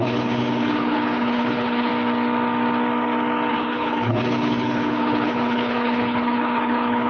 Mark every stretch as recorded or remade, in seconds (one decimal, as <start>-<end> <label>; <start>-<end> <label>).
0.0-1.9 remade; 1.9-3.5 recorded; 3.5-7.1 remade